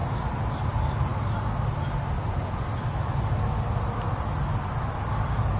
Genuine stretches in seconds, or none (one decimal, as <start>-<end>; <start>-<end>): 0.0-5.6